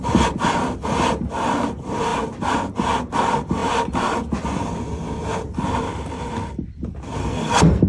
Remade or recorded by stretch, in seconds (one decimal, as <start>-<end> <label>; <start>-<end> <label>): 0.0-7.2 recorded; 7.2-7.9 remade